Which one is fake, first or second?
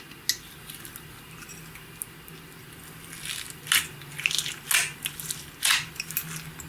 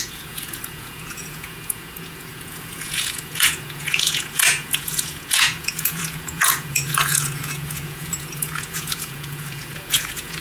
second